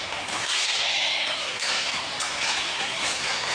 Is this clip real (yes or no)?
no